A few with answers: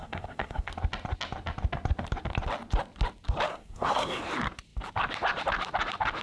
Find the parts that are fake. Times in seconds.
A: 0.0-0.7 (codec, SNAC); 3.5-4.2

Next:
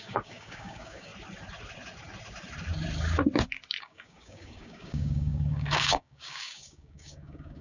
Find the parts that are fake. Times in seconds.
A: 0.0-1.1 (codec, DAC); 3.8-7.6

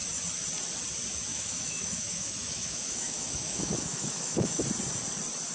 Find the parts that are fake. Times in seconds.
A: 1.3-4.6 (autoencoder, DAC-VAE)

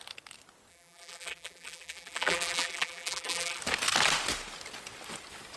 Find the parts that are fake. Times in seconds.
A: 0.7-3.6 (vocoder, BigVGAN v2)

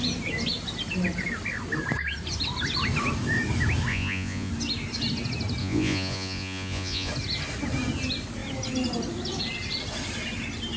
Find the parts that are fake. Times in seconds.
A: 3.9-4.5 (vocoder, Vocos); 5.6-7.1

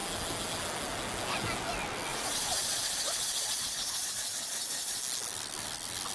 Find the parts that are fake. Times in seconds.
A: 2.1-5.0 (vocoder, Vocos)

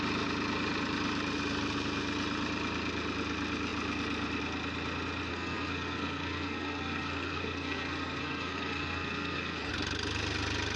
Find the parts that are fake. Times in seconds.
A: 5.3-9.7 (codec, SNAC)

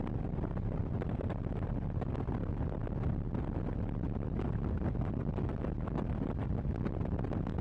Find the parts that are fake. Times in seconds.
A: none